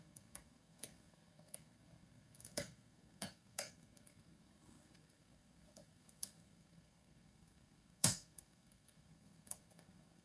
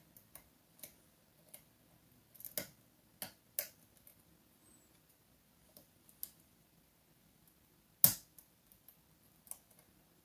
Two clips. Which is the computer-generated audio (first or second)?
first